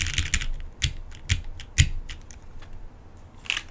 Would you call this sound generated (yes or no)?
no